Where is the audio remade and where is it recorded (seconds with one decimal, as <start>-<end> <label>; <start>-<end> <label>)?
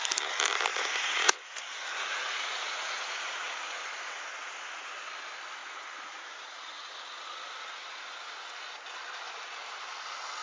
0.0-0.7 recorded; 0.7-4.2 remade; 4.2-5.6 recorded; 5.6-6.9 remade; 6.9-10.4 recorded